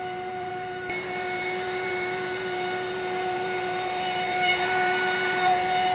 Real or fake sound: fake